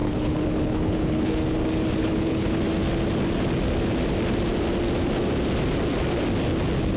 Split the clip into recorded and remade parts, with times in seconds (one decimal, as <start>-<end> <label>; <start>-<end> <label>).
0.0-1.3 remade; 1.3-2.0 recorded; 2.0-2.6 remade; 2.6-7.0 recorded

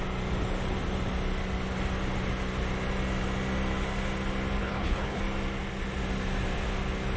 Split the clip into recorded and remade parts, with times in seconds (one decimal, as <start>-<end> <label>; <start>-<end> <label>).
0.0-4.6 recorded; 4.6-5.2 remade; 5.2-7.2 recorded

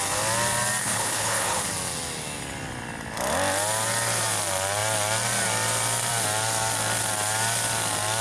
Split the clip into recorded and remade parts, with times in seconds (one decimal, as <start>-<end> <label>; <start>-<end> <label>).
0.0-0.8 recorded; 0.8-1.6 remade; 1.6-8.2 recorded

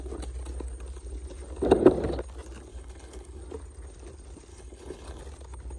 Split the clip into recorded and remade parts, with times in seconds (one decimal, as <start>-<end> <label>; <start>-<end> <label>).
0.0-2.7 recorded; 2.7-3.4 remade; 3.4-4.5 recorded; 4.5-5.2 remade; 5.2-5.8 recorded